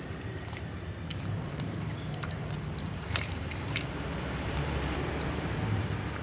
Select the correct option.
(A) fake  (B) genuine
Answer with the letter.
A